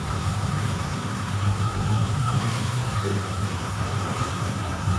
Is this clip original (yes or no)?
no